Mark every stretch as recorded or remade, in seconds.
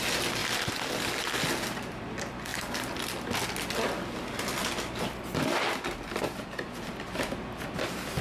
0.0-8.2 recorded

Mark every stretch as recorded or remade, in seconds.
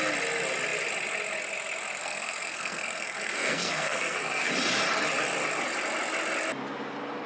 0.0-2.0 recorded; 2.0-4.5 remade; 4.5-7.3 recorded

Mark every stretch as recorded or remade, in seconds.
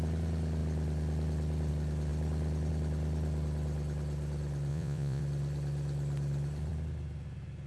0.0-4.7 recorded; 4.7-5.2 remade; 5.2-7.7 recorded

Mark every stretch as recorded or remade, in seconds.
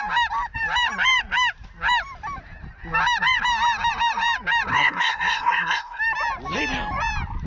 0.0-4.7 recorded; 4.7-6.0 remade; 6.0-7.5 recorded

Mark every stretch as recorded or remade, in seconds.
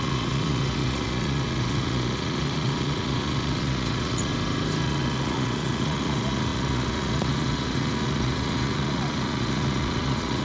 0.0-4.3 remade; 4.3-4.8 recorded; 4.8-10.4 remade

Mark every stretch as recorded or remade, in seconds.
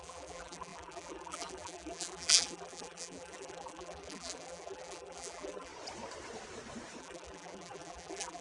0.0-5.7 remade; 5.7-7.0 recorded; 7.0-8.4 remade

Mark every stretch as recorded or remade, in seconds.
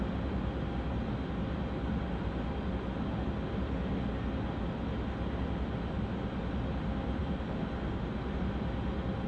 0.0-9.3 recorded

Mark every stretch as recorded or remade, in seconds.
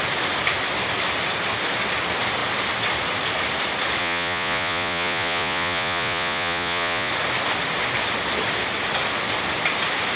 0.0-4.0 recorded; 4.0-7.1 remade; 7.1-10.2 recorded